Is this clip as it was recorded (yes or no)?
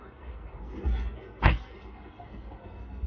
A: no